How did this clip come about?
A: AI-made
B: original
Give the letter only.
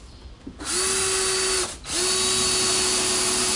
B